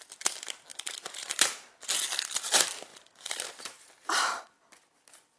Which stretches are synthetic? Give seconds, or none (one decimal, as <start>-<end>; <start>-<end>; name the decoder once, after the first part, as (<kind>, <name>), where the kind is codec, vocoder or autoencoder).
0.7-1.7 (vocoder, BigVGAN v2); 2.9-4.7